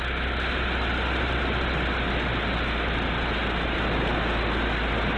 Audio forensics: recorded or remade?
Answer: recorded